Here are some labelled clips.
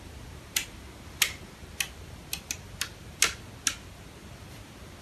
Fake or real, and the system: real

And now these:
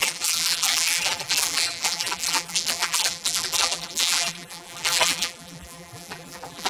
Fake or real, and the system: fake, vocoder, BigVGAN v2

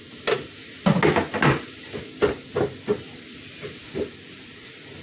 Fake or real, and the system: real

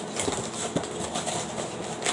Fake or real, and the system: real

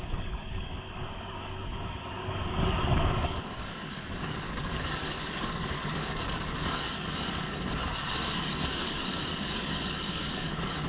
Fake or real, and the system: fake, codec, DAC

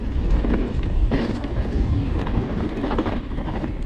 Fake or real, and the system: fake, codec, DAC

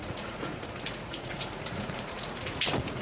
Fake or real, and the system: fake, vocoder, Vocos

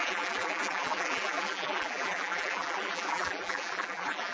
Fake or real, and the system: fake, vocoder, BigVGAN v2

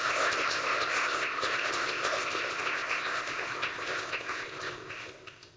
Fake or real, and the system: fake, codec, ZipCodec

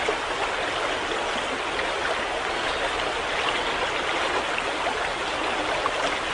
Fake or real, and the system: real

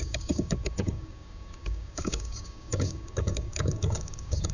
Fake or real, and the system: fake, codec, DAC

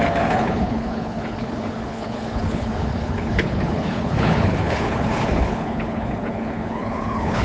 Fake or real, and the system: fake, codec, HILCodec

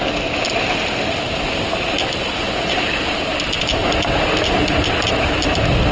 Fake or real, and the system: real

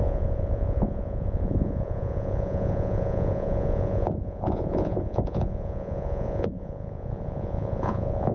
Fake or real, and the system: fake, vocoder, Vocos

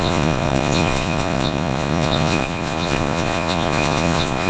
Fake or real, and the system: fake, vocoder, Vocos